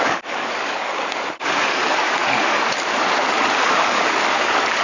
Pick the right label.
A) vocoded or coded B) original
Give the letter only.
A